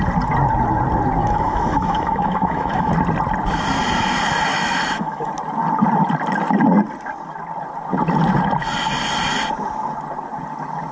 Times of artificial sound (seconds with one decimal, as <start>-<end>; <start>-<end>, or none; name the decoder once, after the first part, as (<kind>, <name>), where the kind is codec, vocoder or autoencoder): 1.2-2.9 (autoencoder, DAC-VAE); 4.5-5.3